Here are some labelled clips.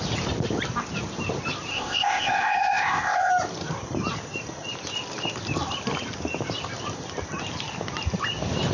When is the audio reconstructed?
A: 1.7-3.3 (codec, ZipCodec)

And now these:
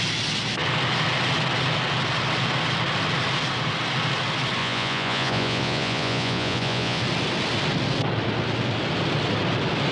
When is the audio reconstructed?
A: 4.6-7.0 (vocoder, Vocos)

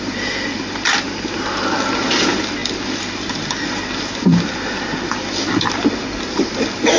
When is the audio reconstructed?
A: none

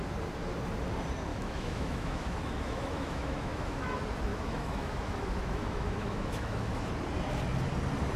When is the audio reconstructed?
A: 1.3-3.9 (autoencoder, DAC-VAE); 4.3-6.9